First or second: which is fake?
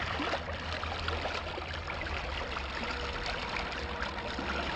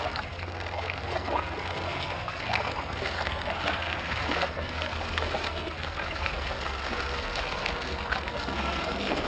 second